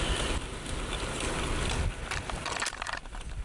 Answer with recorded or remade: recorded